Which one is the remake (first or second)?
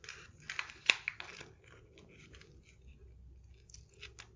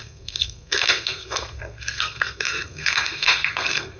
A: second